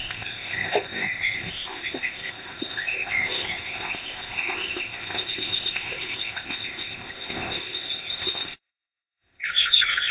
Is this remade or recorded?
remade